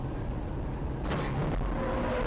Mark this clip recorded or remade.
recorded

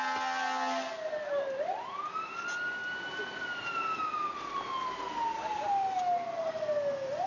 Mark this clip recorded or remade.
recorded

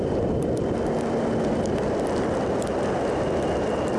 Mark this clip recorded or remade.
recorded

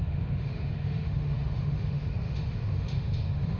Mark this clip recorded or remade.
remade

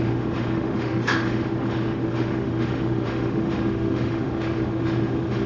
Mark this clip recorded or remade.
remade